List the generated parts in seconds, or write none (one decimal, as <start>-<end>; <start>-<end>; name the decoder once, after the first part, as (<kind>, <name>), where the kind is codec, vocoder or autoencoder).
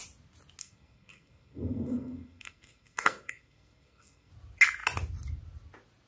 0.6-4.3 (codec, SNAC)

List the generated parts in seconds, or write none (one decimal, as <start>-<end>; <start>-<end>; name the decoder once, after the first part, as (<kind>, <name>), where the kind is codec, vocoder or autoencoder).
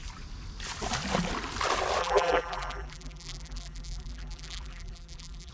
2.0-5.5 (vocoder, BigVGAN v2)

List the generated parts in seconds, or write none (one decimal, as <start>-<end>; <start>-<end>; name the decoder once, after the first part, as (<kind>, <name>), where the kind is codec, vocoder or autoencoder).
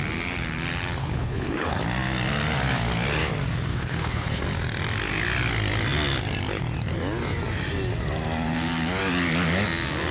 1.0-1.8 (codec, HILCodec); 3.7-4.4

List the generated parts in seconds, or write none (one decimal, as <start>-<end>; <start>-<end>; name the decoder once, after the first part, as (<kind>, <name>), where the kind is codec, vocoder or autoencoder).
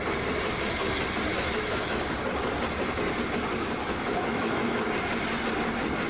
1.3-2.0 (autoencoder, DAC-VAE); 3.8-4.9